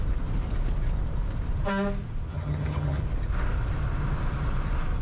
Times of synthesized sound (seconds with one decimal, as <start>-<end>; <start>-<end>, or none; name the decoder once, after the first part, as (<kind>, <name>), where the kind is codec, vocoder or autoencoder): 2.3-3.0 (vocoder, HiFi-GAN)